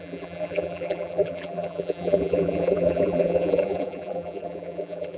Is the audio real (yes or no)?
no